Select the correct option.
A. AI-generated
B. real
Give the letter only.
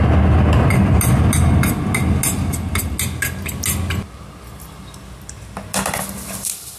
B